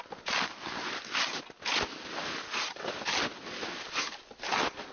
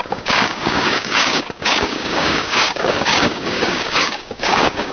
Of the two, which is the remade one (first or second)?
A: second